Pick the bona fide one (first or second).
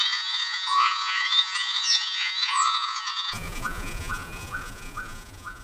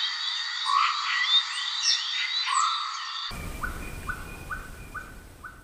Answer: second